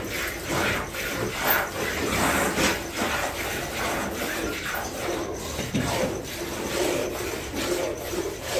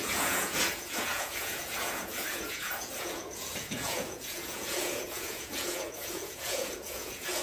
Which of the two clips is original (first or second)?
first